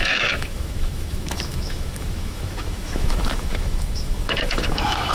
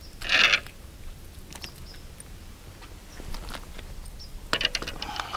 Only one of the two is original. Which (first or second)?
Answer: second